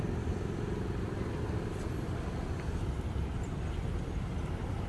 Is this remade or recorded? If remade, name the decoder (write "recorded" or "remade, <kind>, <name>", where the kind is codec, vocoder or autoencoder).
recorded